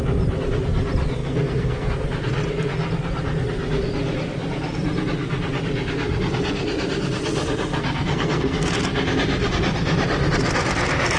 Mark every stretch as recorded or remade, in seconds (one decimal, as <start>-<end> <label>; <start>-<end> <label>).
0.0-1.2 recorded; 1.2-1.9 remade; 1.9-7.7 recorded; 7.7-8.7 remade; 8.7-11.2 recorded